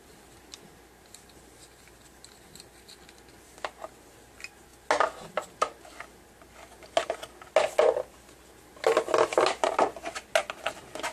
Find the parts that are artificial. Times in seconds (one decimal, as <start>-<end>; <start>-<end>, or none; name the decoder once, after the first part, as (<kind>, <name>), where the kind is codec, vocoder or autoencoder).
none

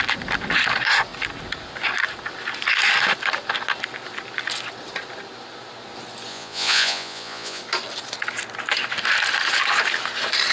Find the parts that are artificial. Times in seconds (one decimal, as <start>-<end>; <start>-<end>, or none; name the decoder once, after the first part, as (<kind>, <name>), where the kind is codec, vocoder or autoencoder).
6.3-7.6 (vocoder, Vocos)

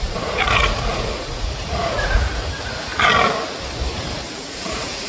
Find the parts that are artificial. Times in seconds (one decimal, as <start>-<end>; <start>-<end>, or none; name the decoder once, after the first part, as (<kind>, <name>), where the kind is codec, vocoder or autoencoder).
0.0-2.9 (vocoder, Vocos); 4.4-5.1

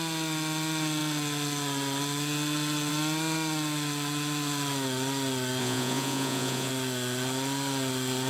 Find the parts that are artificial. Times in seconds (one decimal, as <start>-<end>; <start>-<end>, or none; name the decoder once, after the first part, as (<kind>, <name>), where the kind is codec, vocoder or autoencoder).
5.6-6.7 (vocoder, Vocos)